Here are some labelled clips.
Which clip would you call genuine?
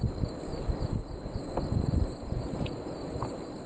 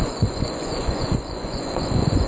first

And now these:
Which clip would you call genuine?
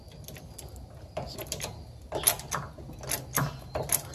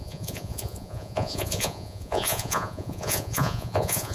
first